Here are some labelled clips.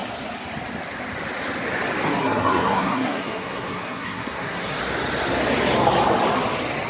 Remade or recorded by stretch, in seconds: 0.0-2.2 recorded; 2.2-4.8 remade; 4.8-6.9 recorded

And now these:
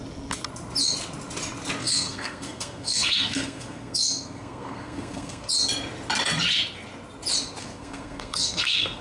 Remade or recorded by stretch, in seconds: 0.0-1.8 recorded; 1.8-5.5 remade; 5.5-7.6 recorded; 7.6-9.0 remade

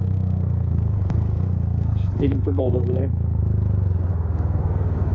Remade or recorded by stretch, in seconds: 0.0-3.4 remade; 3.4-4.1 recorded; 4.1-5.1 remade

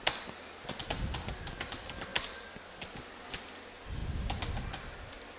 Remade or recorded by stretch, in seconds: 0.0-5.4 recorded